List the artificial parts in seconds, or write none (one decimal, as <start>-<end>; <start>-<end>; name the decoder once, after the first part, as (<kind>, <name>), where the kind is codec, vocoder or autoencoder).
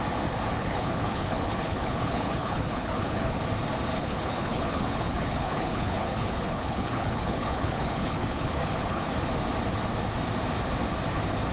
0.5-3.4 (codec, HILCodec); 3.9-9.1